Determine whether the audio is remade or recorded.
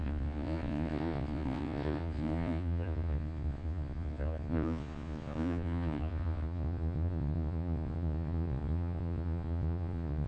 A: remade